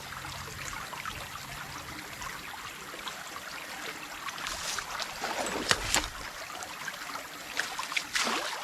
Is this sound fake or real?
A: real